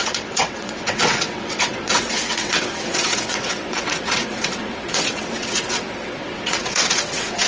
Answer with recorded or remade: remade